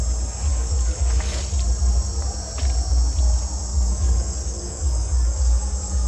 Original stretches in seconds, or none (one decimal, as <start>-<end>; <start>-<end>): 0.0-0.5; 1.4-3.7